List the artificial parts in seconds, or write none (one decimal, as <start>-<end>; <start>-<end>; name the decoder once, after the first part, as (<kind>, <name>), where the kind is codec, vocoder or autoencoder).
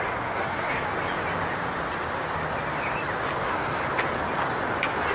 0.0-0.9 (codec, SNAC); 3.4-3.8